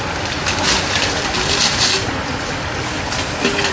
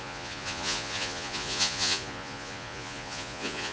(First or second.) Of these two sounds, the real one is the first